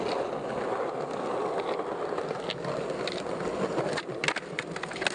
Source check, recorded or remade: recorded